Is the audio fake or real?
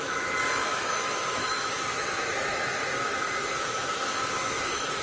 fake